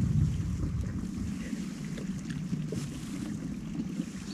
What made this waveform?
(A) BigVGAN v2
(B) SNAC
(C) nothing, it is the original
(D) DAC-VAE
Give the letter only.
C